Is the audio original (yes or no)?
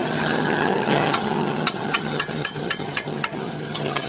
no